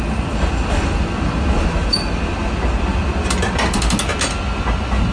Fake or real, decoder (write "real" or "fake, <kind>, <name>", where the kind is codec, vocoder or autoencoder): real